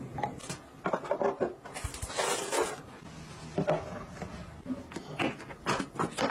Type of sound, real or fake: real